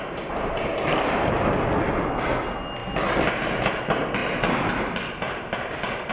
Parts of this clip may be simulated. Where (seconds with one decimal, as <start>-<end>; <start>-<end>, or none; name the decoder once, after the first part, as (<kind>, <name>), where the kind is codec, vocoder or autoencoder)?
none

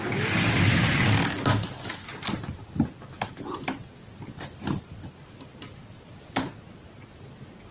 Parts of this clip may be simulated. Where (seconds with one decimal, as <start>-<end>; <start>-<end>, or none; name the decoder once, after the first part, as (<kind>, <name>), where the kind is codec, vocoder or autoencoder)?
none

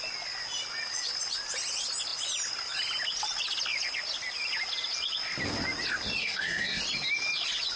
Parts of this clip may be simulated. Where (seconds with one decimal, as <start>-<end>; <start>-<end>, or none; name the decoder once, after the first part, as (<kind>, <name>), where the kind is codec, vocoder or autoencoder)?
6.2-6.8 (codec, SNAC)

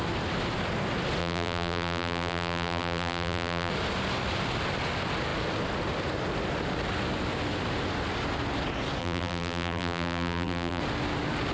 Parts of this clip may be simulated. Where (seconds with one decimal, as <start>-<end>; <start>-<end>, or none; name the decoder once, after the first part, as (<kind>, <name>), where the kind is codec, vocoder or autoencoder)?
1.2-3.7 (vocoder, BigVGAN v2); 9.0-10.8

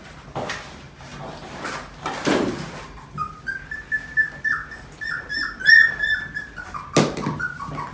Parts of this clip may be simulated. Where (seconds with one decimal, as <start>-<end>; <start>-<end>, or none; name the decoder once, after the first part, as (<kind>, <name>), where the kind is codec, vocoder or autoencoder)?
none

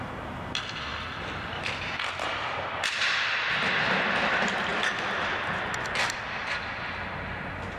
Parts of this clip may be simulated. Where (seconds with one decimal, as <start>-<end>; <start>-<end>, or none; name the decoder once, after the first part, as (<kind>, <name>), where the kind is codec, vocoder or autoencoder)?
4.7-5.3 (vocoder, BigVGAN v2)